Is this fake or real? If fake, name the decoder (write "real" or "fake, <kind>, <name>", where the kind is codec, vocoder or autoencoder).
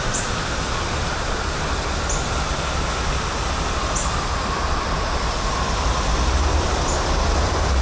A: fake, vocoder, BigVGAN v2